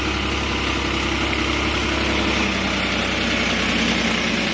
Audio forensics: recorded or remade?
recorded